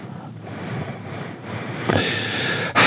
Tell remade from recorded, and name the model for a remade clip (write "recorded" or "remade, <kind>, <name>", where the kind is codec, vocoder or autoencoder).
remade, vocoder, BigVGAN v2